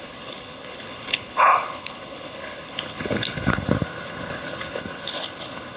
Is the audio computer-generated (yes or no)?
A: yes